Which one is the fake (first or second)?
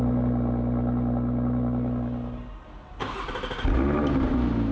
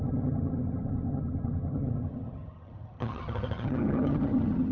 second